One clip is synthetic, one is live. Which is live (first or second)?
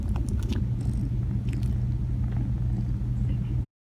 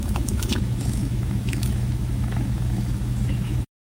first